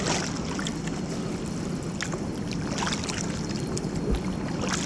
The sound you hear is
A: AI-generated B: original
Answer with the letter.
B